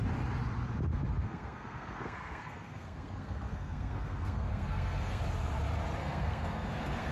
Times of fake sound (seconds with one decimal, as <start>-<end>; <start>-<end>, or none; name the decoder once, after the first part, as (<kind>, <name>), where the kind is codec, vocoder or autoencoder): 0.9-5.2 (codec, SNAC); 6.0-7.1